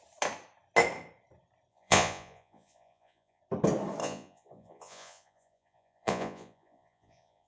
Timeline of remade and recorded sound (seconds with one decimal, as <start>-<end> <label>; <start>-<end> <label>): 0.0-1.7 recorded; 1.7-3.4 remade; 3.4-4.0 recorded; 4.0-7.5 remade